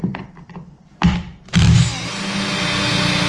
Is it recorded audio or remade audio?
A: recorded